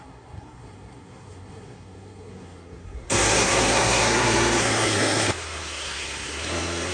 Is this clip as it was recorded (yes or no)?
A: no